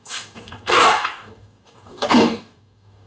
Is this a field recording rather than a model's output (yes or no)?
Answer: no